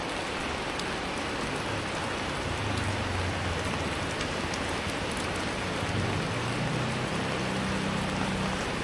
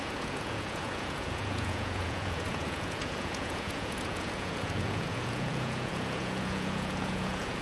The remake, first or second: second